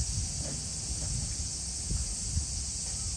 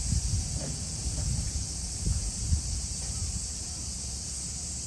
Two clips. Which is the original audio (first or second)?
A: first